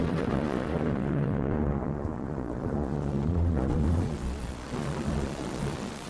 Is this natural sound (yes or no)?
no